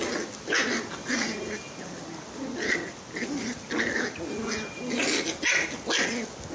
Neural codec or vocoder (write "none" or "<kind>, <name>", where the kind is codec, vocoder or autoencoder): none